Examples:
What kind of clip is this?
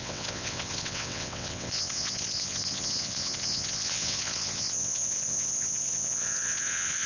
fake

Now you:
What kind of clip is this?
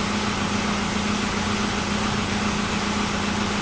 real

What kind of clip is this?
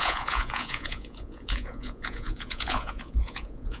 fake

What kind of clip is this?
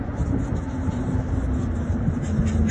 real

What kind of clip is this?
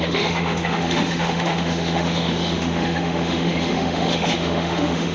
fake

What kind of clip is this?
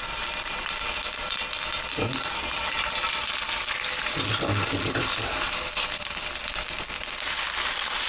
real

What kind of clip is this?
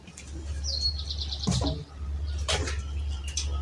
real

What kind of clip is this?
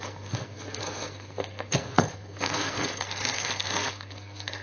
fake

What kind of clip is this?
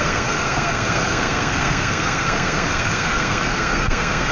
fake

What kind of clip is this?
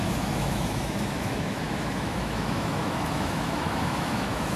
fake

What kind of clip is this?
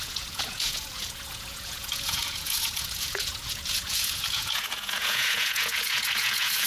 fake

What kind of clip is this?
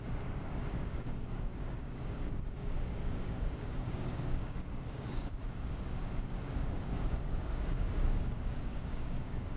fake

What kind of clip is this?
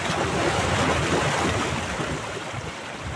real